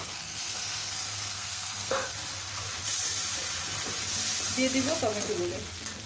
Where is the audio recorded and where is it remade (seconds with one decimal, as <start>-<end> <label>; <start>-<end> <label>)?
0.0-2.1 remade; 2.1-6.1 recorded